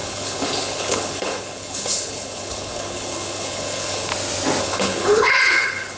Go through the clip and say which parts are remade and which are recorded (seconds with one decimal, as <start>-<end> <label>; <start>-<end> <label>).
0.0-4.1 remade; 4.1-4.6 recorded; 4.6-6.0 remade